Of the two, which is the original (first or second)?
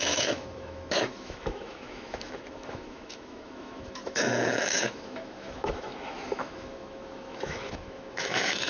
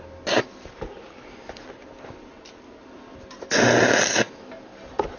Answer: second